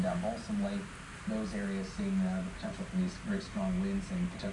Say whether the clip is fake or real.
real